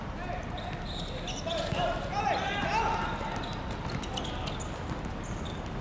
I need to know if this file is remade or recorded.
recorded